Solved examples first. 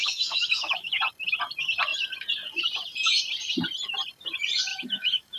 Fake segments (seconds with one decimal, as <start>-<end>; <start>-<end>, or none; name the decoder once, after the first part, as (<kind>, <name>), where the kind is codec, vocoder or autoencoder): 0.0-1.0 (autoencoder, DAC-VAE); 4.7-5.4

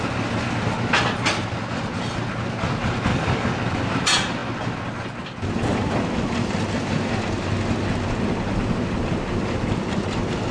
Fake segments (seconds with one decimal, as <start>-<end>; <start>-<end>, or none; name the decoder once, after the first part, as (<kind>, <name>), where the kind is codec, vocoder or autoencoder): 3.1-3.8 (codec, DAC)

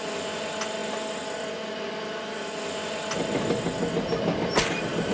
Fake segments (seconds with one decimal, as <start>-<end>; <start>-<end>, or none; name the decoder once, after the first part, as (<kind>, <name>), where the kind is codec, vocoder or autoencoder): none